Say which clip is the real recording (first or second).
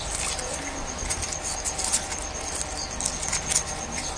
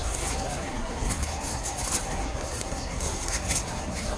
first